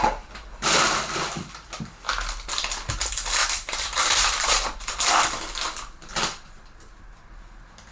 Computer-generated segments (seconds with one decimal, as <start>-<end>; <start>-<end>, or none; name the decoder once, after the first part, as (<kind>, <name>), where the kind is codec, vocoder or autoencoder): 3.4-4.5 (vocoder, BigVGAN v2)